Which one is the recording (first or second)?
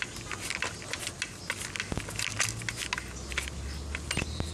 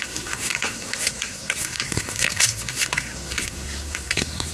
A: first